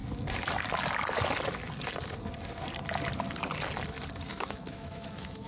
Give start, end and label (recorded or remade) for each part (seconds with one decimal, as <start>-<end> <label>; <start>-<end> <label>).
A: 0.0-4.3 recorded; 4.3-5.5 remade